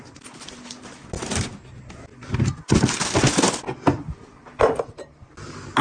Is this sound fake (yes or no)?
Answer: no